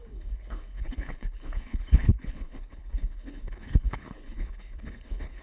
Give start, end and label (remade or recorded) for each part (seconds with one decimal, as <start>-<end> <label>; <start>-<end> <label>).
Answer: 0.0-5.4 remade